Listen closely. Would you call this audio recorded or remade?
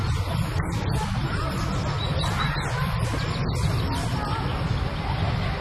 recorded